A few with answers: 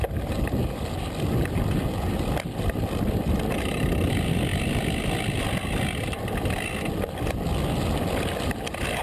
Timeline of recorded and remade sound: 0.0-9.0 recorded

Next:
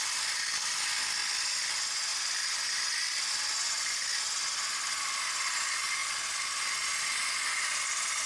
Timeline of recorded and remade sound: 0.0-8.3 recorded

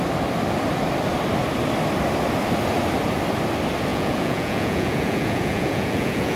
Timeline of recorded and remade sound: 0.0-3.9 recorded; 3.9-6.4 remade

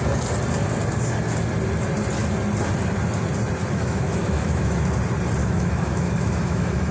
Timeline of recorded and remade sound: 0.0-3.6 recorded; 3.6-5.0 remade; 5.0-5.4 recorded; 5.4-6.9 remade

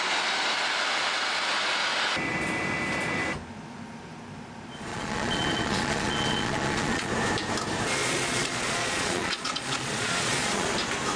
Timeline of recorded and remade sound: 0.0-4.9 recorded; 4.9-7.1 remade; 7.1-8.0 recorded; 8.0-10.7 remade; 10.7-11.2 recorded